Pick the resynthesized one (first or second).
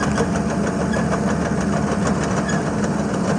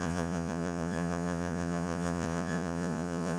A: second